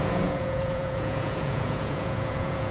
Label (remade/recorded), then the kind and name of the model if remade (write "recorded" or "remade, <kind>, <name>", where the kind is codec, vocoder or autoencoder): remade, vocoder, Vocos